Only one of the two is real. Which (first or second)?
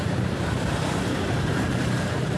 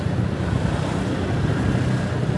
second